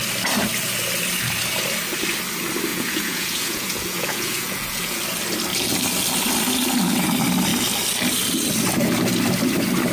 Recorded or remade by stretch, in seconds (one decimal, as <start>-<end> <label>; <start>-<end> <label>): 0.0-2.7 recorded; 2.7-5.0 remade; 5.0-9.9 recorded